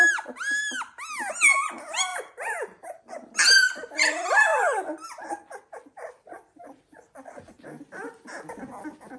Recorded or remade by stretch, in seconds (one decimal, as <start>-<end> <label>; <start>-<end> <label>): 0.0-9.2 recorded